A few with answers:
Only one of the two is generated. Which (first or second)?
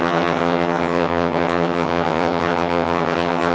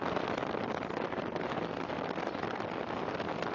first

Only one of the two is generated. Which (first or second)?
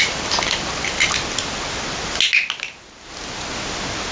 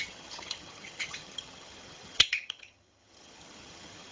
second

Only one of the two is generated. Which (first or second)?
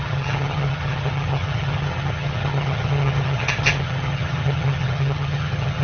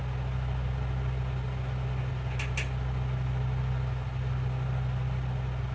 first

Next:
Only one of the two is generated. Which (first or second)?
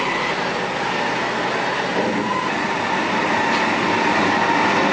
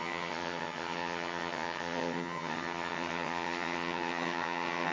second